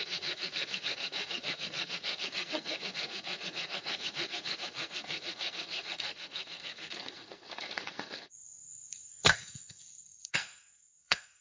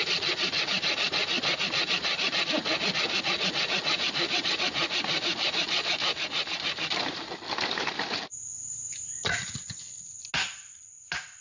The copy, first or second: first